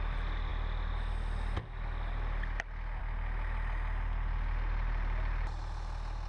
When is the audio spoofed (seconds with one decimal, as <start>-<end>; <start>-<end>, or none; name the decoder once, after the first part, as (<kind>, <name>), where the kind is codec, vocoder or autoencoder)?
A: none